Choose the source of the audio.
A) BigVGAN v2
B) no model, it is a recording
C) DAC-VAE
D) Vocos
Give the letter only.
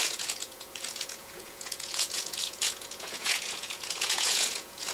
D